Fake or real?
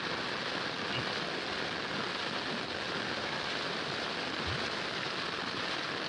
real